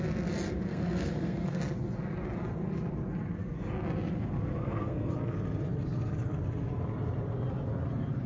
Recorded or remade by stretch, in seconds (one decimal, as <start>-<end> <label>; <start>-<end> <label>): 0.0-0.7 recorded; 0.7-1.6 remade; 1.6-4.6 recorded; 4.6-5.1 remade; 5.1-8.3 recorded